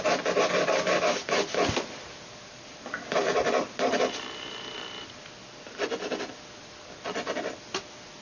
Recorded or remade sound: recorded